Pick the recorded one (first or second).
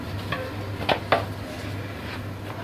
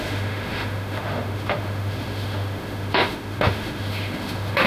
first